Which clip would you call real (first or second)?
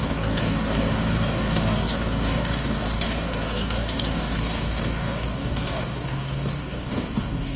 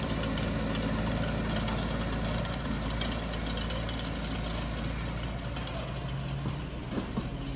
second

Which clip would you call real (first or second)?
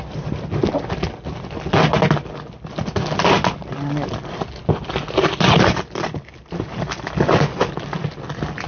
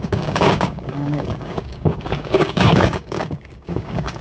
first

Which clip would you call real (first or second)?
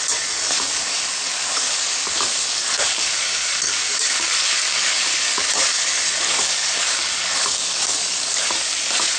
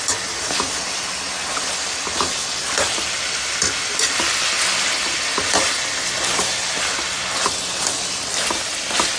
second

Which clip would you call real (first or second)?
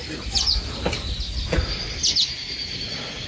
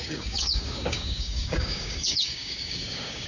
first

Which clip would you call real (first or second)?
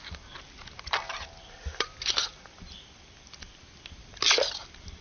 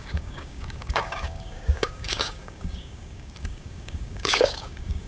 first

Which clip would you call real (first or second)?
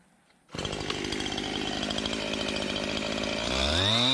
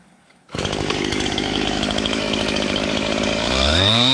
first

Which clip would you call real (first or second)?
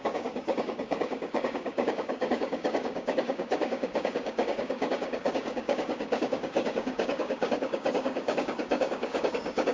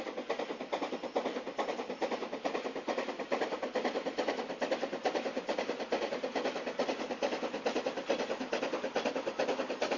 second